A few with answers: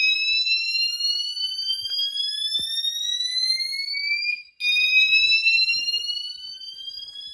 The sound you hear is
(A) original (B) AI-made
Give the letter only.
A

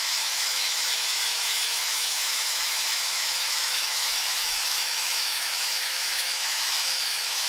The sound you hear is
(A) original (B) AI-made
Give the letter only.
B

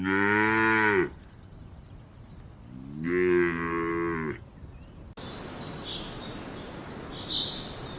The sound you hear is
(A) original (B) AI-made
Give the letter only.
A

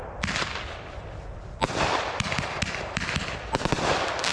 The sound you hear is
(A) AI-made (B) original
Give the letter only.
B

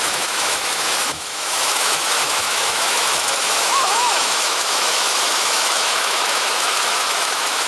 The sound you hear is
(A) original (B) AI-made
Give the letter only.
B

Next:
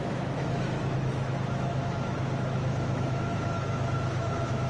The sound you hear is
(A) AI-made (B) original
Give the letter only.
A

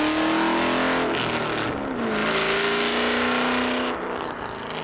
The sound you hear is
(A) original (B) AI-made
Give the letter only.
A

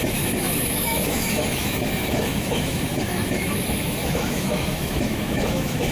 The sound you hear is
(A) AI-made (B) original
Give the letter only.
A